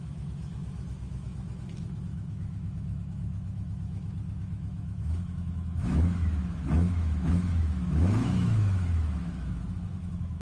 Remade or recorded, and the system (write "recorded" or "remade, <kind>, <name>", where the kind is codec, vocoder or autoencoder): remade, autoencoder, DAC-VAE